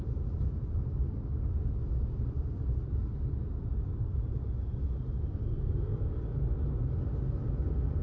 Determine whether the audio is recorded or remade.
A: recorded